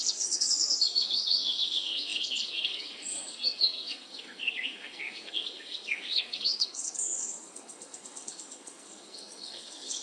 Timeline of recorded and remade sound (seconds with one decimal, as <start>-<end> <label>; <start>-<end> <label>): 0.0-10.0 remade